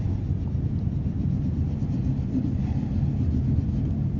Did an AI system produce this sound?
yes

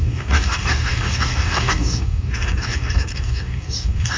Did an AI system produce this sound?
yes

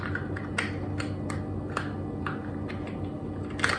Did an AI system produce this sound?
no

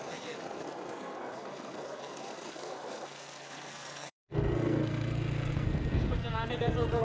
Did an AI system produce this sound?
yes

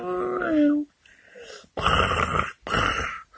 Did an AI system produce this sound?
no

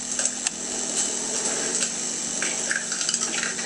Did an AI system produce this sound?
no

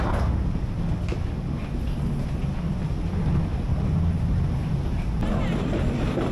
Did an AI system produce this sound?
no